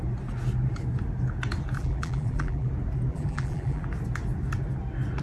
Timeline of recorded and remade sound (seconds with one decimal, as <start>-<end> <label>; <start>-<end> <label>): 0.0-1.8 recorded; 1.8-2.7 remade; 2.7-3.1 recorded; 3.1-3.8 remade; 3.8-5.2 recorded